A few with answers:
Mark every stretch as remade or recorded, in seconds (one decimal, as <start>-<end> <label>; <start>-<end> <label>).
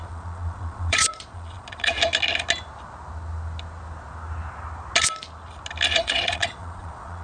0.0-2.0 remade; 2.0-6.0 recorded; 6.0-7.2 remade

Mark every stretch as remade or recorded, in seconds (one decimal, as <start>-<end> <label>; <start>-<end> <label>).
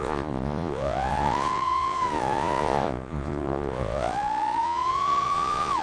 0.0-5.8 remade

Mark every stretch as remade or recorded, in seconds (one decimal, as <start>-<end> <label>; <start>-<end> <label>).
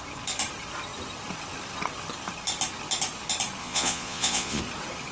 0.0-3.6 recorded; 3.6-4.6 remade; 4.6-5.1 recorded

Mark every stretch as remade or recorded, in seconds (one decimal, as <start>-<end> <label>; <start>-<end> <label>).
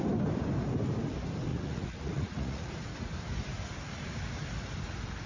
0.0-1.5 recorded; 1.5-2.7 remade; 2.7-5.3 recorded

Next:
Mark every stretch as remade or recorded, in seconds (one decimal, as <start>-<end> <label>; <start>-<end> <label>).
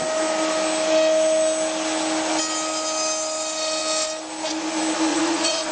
0.0-5.1 recorded; 5.1-5.7 remade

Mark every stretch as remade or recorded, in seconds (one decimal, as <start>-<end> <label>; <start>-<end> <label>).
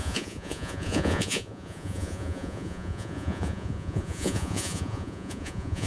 0.0-5.9 remade